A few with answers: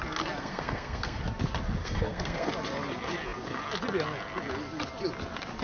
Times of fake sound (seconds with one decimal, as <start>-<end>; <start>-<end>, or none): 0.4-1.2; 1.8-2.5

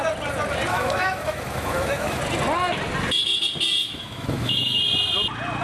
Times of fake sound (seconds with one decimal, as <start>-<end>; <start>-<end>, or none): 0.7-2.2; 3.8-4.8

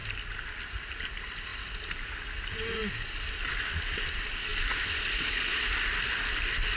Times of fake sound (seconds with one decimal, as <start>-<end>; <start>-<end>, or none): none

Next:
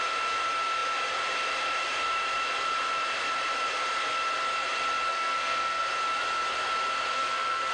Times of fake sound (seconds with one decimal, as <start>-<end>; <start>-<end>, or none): 5.1-5.8; 7.1-7.7

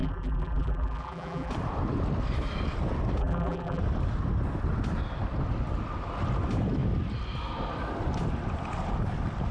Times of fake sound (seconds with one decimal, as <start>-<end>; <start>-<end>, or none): 0.0-1.5; 3.2-3.8